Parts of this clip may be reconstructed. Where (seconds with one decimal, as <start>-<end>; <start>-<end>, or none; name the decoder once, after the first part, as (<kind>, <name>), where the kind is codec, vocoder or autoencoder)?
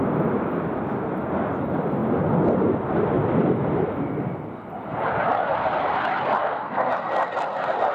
6.4-6.9 (codec, SNAC)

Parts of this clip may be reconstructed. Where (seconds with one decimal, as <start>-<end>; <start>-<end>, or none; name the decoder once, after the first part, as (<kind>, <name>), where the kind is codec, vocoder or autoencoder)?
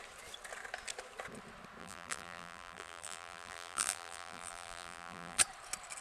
1.8-5.4 (vocoder, BigVGAN v2)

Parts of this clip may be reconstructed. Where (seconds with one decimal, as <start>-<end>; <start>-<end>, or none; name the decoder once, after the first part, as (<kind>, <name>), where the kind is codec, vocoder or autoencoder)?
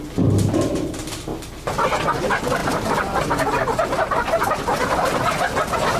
2.6-4.1 (vocoder, BigVGAN v2)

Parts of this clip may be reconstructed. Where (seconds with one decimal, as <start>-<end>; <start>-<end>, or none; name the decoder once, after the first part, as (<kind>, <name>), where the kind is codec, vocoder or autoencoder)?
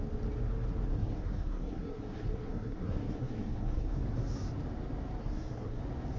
0.9-4.0 (codec, SNAC); 5.2-5.8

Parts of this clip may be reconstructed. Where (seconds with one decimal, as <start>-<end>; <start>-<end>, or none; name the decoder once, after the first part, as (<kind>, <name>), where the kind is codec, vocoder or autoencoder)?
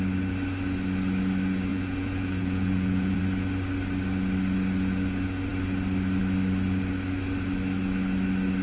1.7-3.2 (vocoder, Vocos)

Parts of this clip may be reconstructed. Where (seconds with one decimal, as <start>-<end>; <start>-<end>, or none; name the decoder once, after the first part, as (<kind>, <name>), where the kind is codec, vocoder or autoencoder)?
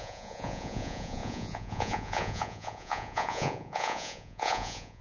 0.0-5.0 (vocoder, Vocos)